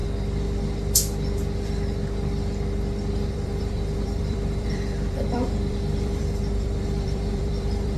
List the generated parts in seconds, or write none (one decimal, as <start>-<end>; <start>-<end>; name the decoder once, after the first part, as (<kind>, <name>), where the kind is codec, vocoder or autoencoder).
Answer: 3.3-8.0 (vocoder, BigVGAN v2)